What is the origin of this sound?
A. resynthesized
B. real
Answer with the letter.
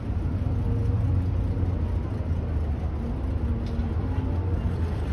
B